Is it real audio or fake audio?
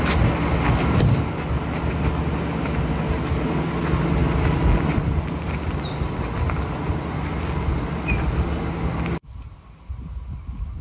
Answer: real